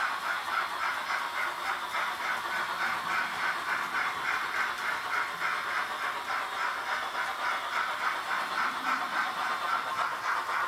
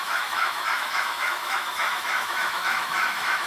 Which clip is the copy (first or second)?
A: second